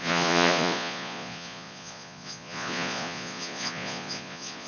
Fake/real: fake